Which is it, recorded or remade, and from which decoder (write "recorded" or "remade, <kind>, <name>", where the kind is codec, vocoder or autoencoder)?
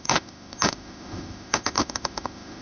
remade, autoencoder, DAC-VAE